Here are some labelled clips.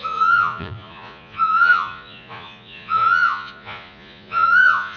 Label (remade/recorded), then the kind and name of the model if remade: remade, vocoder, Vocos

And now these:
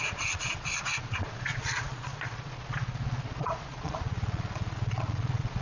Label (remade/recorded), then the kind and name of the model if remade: remade, vocoder, Vocos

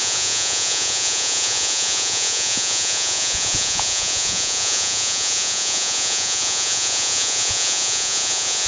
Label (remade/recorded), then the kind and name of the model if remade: remade, vocoder, Vocos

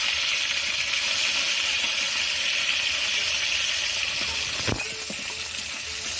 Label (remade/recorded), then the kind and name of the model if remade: recorded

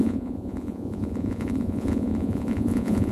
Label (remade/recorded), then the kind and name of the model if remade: remade, vocoder, Vocos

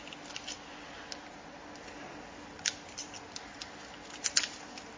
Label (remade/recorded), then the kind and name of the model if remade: recorded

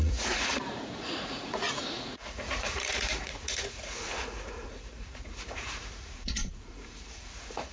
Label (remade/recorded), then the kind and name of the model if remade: remade, vocoder, Vocos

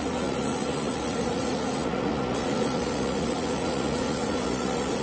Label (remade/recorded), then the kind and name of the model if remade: remade, vocoder, Vocos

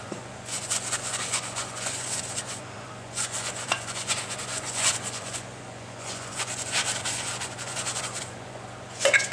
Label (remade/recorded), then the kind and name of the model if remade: remade, vocoder, Vocos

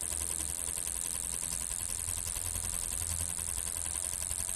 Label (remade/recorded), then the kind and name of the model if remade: recorded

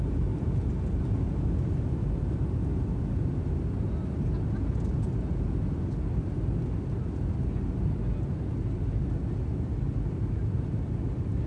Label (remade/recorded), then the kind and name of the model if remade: recorded